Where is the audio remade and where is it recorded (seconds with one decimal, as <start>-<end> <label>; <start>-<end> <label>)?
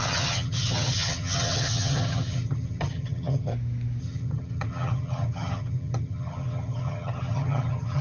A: 0.0-3.5 remade; 3.5-4.0 recorded; 4.0-8.0 remade